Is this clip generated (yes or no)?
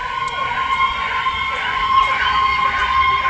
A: yes